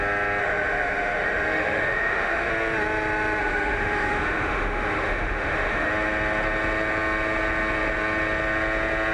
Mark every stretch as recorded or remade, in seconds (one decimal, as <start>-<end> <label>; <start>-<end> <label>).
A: 0.0-0.4 recorded; 0.4-2.5 remade; 2.5-3.4 recorded; 3.4-5.9 remade; 5.9-9.1 recorded